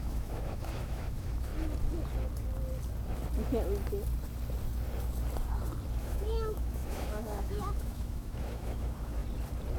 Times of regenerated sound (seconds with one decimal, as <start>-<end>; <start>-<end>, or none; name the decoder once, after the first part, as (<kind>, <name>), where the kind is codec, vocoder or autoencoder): 0.0-1.5 (autoencoder, DAC-VAE); 6.0-9.2